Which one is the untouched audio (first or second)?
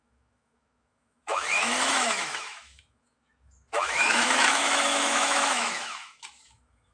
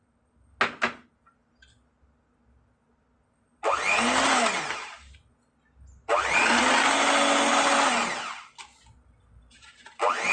second